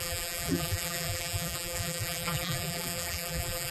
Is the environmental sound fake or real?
fake